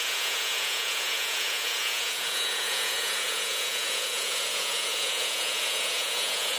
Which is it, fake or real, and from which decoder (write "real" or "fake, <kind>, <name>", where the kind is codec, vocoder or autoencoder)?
fake, vocoder, Vocos